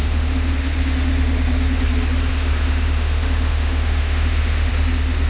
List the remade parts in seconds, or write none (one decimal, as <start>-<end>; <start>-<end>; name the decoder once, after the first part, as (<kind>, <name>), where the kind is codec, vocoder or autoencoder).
0.0-0.5 (autoencoder, DAC-VAE); 2.3-4.7

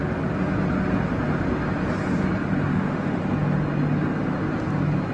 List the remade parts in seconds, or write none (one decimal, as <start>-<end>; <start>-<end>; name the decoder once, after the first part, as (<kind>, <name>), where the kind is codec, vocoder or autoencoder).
2.7-3.2 (autoencoder, DAC-VAE)

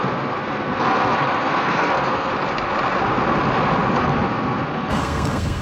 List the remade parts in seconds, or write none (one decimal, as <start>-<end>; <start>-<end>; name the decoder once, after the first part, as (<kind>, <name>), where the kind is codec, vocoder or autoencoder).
0.0-2.3 (codec, SNAC); 4.0-5.6

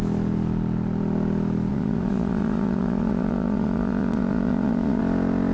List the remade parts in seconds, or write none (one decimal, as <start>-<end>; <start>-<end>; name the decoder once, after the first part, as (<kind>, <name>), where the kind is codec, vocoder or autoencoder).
1.7-5.0 (vocoder, Vocos)

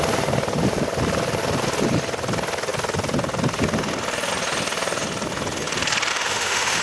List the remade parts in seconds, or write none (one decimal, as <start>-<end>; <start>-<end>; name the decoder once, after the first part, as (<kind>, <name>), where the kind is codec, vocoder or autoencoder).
6.1-6.8 (autoencoder, DAC-VAE)

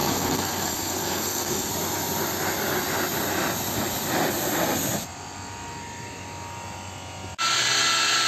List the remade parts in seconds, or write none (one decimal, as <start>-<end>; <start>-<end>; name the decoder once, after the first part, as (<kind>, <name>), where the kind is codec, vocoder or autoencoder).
0.0-1.7 (codec, SNAC)

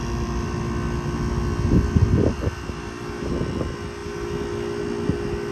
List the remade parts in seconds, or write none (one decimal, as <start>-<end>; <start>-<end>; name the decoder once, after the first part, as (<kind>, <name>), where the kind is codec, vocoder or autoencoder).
none